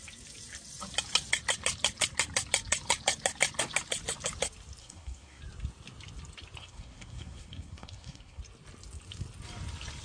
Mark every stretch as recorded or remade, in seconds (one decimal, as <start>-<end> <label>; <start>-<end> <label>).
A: 0.0-4.8 recorded; 4.8-5.4 remade; 5.4-6.6 recorded; 6.6-8.4 remade; 8.4-10.0 recorded

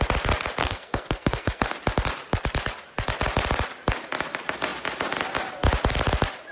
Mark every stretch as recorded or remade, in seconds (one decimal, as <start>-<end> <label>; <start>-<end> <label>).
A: 0.0-0.6 recorded; 0.6-1.7 remade; 1.7-6.5 recorded

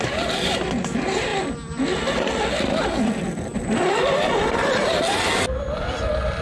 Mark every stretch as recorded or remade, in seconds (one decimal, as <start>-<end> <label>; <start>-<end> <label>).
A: 0.0-6.4 recorded

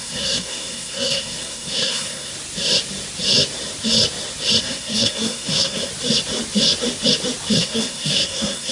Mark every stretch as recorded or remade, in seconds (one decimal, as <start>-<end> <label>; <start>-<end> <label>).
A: 0.0-2.3 remade; 2.3-4.6 recorded; 4.6-5.9 remade; 5.9-7.6 recorded; 7.6-8.7 remade